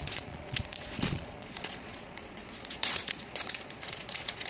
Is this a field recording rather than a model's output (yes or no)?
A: no